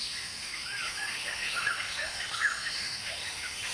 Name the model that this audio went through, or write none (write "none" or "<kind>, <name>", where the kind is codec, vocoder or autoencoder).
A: autoencoder, DAC-VAE